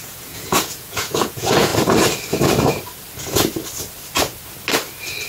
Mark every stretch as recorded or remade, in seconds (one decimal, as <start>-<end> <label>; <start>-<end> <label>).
0.0-1.7 remade; 1.7-5.3 recorded